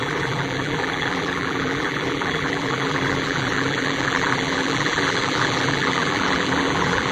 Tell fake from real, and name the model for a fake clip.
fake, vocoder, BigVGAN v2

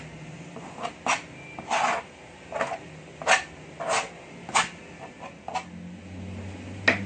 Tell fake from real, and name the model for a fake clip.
real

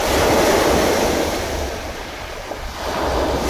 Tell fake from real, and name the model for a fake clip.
real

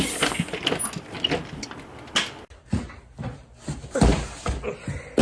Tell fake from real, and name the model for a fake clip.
real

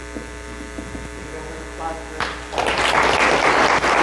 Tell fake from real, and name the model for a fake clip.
real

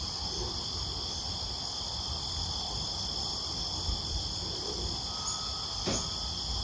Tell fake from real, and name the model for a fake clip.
real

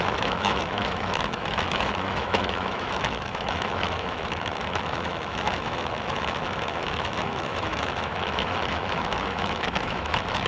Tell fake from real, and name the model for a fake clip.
fake, autoencoder, DAC-VAE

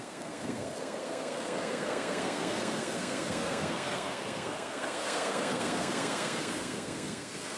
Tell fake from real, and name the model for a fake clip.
fake, codec, SNAC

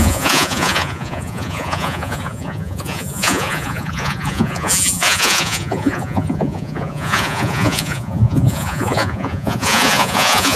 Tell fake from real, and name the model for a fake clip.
fake, vocoder, Vocos